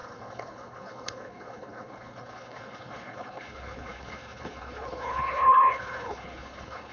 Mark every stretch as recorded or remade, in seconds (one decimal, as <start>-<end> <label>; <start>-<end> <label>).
0.0-6.9 remade